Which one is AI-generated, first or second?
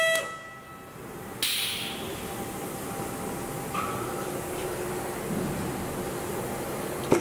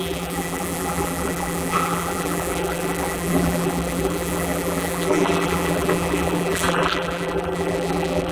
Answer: second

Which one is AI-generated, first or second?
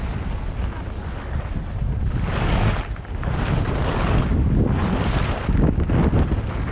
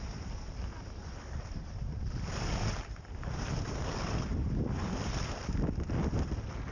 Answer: second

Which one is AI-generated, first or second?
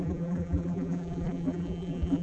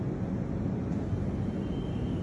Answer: first